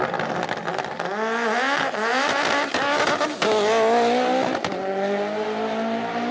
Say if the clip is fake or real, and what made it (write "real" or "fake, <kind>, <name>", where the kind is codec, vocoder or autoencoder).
real